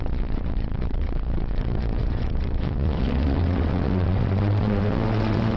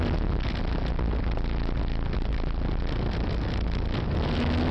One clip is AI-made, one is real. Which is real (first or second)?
second